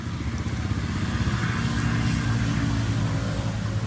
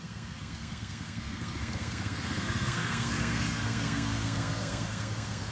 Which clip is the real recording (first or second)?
first